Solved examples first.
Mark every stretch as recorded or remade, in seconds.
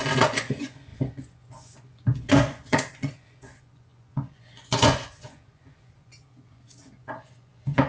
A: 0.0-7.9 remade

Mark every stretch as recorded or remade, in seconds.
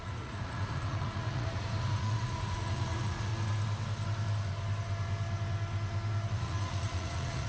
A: 0.0-3.3 remade; 3.3-6.3 recorded; 6.3-7.5 remade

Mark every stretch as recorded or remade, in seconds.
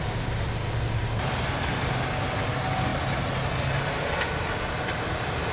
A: 0.0-5.5 recorded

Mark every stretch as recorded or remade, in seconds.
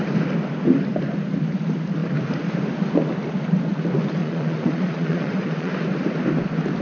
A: 0.0-4.2 recorded; 4.2-5.7 remade; 5.7-6.8 recorded